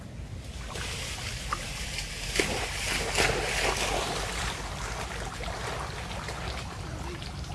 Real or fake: real